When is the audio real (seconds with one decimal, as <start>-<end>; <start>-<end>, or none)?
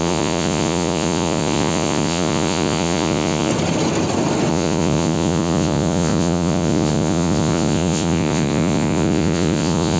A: 3.5-4.5